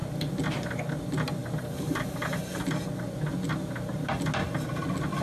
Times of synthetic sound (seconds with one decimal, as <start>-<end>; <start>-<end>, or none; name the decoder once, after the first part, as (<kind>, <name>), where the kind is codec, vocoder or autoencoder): none